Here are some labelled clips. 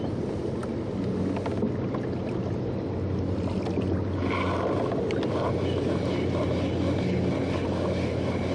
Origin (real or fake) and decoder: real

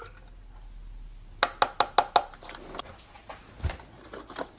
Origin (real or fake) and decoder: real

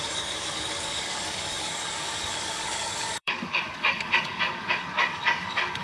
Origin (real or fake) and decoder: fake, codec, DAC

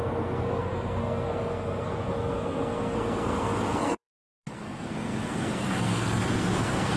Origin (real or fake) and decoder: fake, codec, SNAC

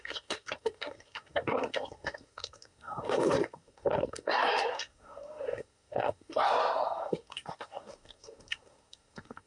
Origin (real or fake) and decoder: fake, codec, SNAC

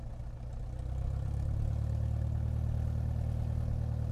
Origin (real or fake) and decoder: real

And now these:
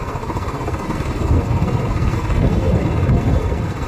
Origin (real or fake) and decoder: fake, codec, SNAC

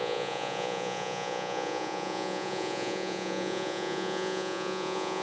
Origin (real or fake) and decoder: fake, vocoder, Vocos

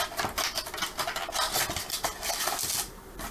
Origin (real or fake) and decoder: real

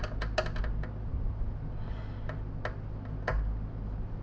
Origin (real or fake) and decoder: real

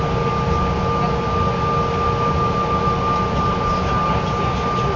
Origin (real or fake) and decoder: real